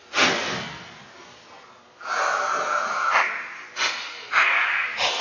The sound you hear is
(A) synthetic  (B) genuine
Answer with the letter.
B